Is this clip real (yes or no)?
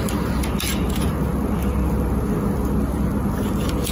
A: yes